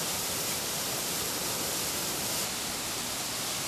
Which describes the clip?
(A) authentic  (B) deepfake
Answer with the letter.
B